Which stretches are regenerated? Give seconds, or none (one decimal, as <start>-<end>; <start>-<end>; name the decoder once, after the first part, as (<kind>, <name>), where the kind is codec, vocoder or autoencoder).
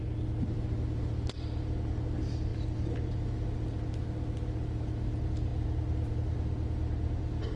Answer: none